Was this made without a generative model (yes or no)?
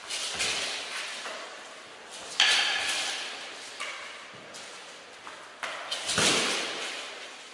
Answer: yes